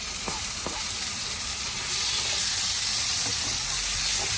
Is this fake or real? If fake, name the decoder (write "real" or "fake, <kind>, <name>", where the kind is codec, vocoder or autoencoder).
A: real